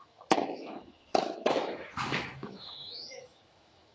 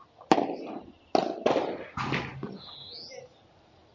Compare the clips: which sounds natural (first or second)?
second